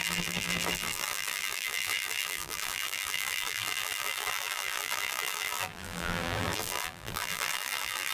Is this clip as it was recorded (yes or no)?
no